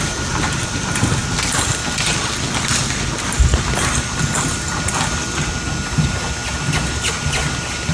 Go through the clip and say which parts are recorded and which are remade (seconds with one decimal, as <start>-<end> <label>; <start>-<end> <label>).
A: 0.0-7.9 recorded

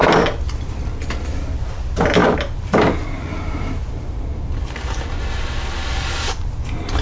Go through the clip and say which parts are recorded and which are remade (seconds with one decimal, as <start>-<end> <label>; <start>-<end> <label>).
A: 0.0-2.2 recorded; 2.2-5.3 remade; 5.3-7.0 recorded

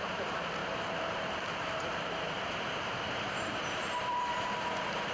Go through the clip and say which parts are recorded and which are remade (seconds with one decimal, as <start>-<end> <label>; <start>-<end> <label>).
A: 0.0-5.1 remade

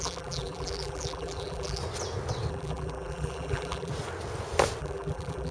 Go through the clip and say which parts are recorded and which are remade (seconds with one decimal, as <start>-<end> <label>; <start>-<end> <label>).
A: 0.0-1.8 remade; 1.8-2.5 recorded; 2.5-3.9 remade; 3.9-4.8 recorded; 4.8-5.5 remade

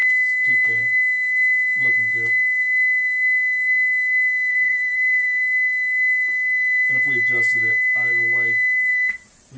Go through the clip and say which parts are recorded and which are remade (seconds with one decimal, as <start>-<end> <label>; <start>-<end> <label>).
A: 0.0-4.5 recorded; 4.5-5.4 remade; 5.4-8.9 recorded; 8.9-9.6 remade

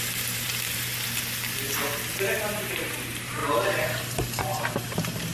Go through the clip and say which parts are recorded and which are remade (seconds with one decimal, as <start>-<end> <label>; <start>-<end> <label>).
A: 0.0-0.9 remade; 0.9-2.4 recorded; 2.4-3.4 remade; 3.4-4.4 recorded; 4.4-5.3 remade

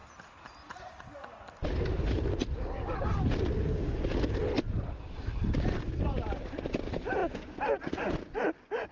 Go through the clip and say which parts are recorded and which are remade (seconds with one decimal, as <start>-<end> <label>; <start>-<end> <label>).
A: 0.0-8.9 recorded